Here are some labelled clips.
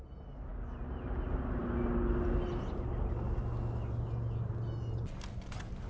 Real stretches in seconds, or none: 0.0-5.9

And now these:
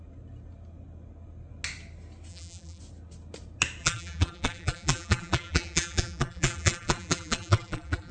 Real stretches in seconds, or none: 0.0-2.3; 2.8-3.8

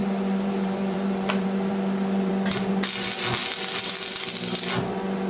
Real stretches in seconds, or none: 2.3-5.3

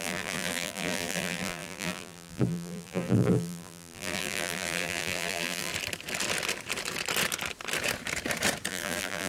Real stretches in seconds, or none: 5.7-8.7

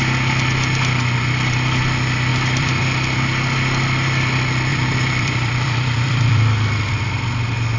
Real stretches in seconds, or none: 0.0-2.3; 2.8-4.7; 6.9-7.8

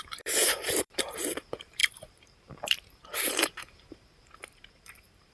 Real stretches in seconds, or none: none

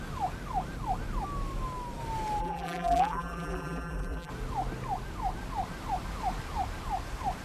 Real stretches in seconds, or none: 0.0-2.4; 4.3-7.4